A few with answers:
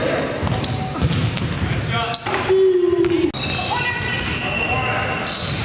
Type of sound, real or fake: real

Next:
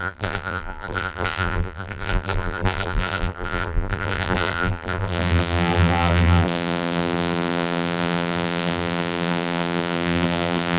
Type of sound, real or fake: fake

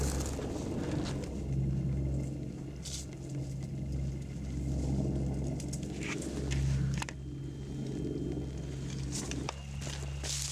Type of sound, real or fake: real